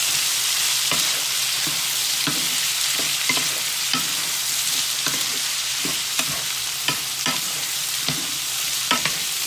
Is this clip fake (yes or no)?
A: yes